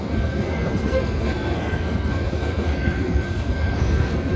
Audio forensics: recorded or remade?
remade